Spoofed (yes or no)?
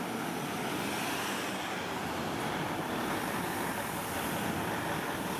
no